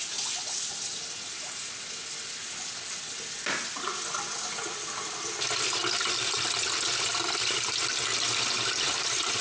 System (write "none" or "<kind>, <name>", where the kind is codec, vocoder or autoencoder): none